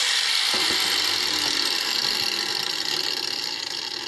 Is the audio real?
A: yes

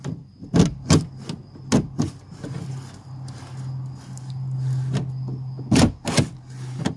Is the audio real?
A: yes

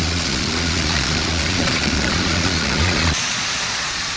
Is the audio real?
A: no